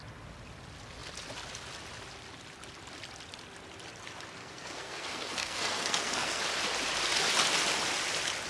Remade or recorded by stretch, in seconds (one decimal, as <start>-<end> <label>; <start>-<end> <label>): 0.0-4.4 recorded; 4.4-6.4 remade; 6.4-8.5 recorded